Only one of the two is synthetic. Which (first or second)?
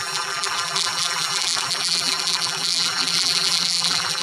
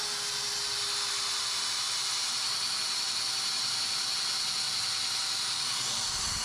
first